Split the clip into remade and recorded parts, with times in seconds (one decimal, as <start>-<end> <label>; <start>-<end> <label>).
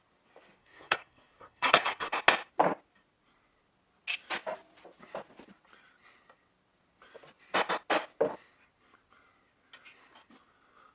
0.0-0.6 recorded; 0.6-2.1 remade; 2.1-10.9 recorded